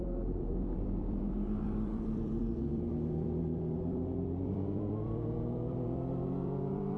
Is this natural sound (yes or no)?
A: no